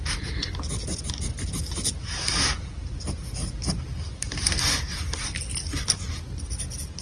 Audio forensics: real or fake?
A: real